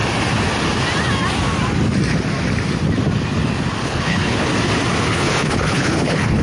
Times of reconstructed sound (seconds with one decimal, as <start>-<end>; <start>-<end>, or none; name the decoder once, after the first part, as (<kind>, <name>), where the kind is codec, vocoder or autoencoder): 3.8-4.5 (codec, HILCodec); 5.1-6.4